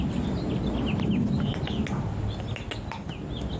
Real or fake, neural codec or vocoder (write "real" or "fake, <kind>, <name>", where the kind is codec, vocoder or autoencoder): real